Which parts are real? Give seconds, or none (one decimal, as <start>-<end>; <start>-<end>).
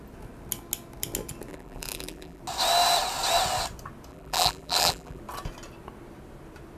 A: 0.0-1.5; 2.4-4.1; 5.2-6.8